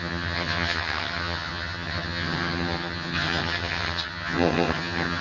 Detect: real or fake fake